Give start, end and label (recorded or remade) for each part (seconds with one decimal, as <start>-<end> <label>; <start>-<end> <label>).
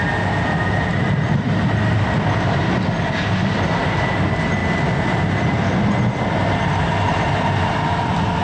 0.0-8.4 recorded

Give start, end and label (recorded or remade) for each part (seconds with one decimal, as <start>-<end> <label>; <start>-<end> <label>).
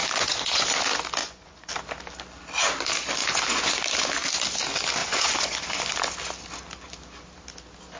0.0-0.6 remade; 0.6-1.2 recorded; 1.2-1.7 remade; 1.7-3.2 recorded; 3.2-3.7 remade; 3.7-5.0 recorded; 5.0-5.8 remade; 5.8-8.0 recorded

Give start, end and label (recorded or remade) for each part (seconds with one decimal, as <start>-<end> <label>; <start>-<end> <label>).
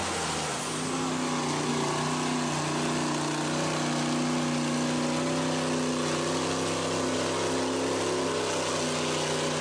0.0-9.6 recorded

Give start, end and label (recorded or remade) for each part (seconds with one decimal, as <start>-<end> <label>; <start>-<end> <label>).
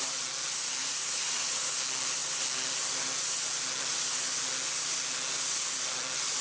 0.0-0.8 recorded; 0.8-1.7 remade; 1.7-6.4 recorded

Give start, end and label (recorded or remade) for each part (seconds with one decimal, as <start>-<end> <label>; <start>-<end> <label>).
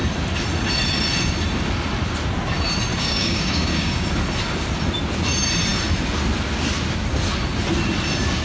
0.0-2.9 recorded; 2.9-4.1 remade; 4.1-8.4 recorded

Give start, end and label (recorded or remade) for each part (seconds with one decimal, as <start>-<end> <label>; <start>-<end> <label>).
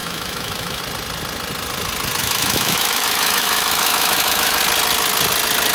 0.0-0.8 remade; 0.8-2.2 recorded; 2.2-4.6 remade; 4.6-5.7 recorded